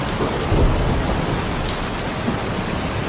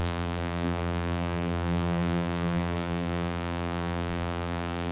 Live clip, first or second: first